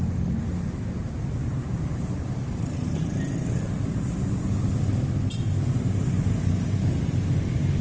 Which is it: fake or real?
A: real